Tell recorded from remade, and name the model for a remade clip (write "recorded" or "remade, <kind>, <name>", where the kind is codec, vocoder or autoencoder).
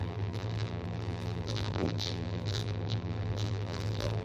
remade, vocoder, BigVGAN v2